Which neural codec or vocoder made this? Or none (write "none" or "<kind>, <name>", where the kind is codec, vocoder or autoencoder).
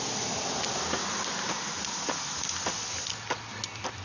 none